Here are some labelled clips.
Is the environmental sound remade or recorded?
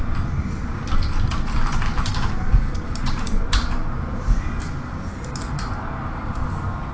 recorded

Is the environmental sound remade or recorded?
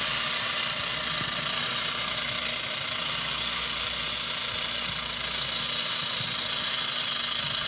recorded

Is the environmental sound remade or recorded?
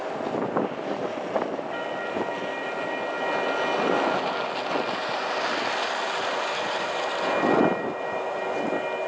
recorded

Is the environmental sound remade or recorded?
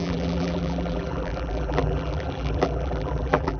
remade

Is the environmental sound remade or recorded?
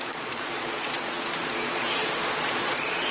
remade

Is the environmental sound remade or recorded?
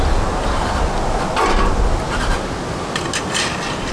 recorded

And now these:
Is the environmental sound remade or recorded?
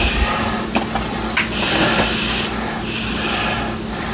recorded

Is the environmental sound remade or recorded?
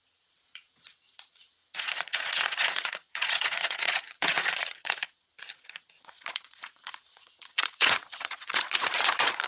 remade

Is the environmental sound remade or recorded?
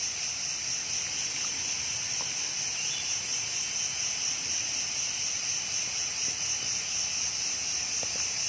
recorded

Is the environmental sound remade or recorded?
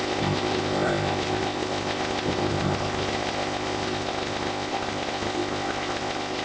remade